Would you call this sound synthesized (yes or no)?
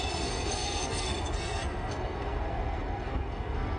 yes